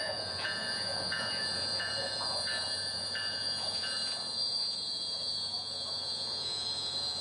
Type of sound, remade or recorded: remade